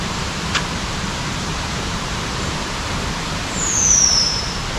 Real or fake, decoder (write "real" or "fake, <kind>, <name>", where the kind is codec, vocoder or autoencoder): fake, vocoder, BigVGAN v2